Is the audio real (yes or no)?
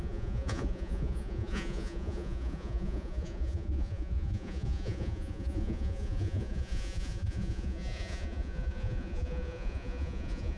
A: no